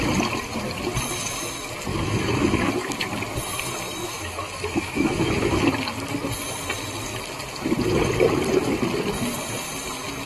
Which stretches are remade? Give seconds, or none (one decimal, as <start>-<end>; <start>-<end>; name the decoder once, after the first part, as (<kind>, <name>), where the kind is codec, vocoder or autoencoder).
1.9-2.7 (autoencoder, DAC-VAE); 4.0-5.7